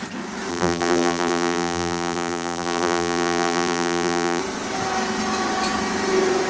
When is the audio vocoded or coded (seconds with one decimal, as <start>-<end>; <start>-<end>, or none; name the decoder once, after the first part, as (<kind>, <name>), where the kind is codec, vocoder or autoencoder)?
0.5-4.4 (vocoder, BigVGAN v2)

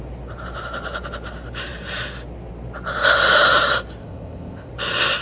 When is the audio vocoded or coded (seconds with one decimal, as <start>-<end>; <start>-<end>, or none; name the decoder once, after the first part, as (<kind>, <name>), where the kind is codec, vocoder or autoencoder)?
4.0-4.7 (codec, ZipCodec)